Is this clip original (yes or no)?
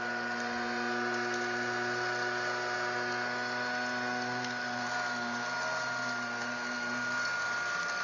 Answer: yes